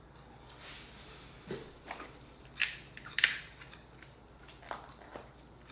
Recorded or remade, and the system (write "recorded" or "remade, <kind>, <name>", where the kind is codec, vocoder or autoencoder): recorded